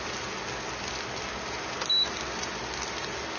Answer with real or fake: real